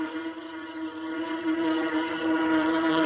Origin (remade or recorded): remade